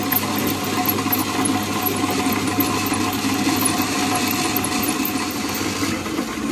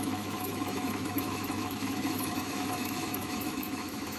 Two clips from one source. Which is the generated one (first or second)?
second